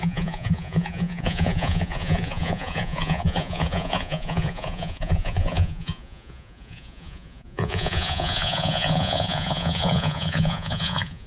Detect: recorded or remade remade